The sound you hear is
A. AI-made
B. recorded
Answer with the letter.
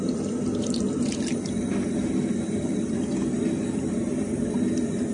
B